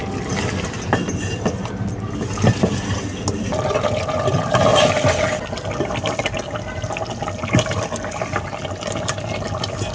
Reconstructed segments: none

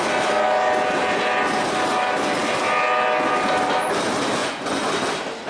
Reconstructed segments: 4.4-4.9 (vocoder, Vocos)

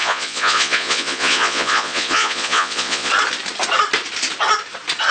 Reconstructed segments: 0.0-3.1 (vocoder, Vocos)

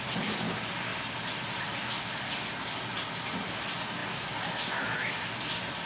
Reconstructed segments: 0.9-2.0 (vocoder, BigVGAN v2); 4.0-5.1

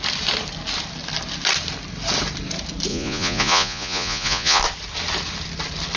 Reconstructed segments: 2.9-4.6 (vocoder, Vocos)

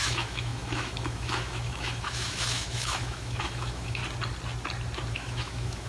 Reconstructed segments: 0.0-4.0 (autoencoder, DAC-VAE); 5.1-5.9

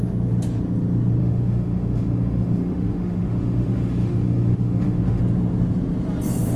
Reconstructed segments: 1.2-5.2 (autoencoder, DAC-VAE)